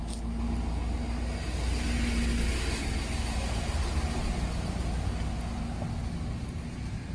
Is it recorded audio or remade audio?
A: recorded